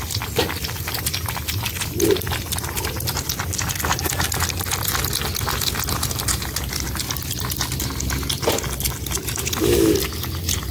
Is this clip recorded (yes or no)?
yes